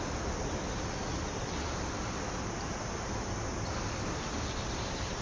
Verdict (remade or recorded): recorded